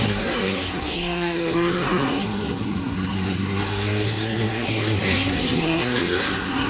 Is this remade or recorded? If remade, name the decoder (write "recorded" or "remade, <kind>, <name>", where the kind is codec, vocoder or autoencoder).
remade, codec, SNAC